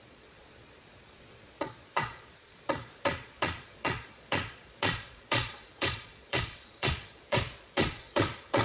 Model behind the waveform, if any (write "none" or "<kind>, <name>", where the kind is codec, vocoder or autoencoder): vocoder, Vocos